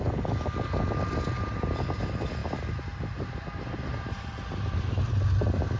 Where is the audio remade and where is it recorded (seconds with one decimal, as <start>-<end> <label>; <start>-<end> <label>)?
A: 0.0-5.8 recorded

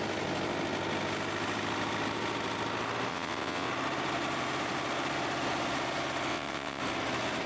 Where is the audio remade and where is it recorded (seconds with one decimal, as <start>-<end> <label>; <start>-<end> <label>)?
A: 0.0-3.1 recorded; 3.1-3.7 remade; 3.7-6.3 recorded; 6.3-6.8 remade; 6.8-7.5 recorded

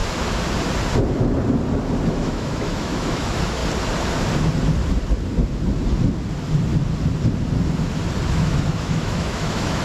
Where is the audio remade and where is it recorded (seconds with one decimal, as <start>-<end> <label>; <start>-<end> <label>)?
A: 0.0-2.1 recorded; 2.1-3.6 remade; 3.6-8.3 recorded; 8.3-9.8 remade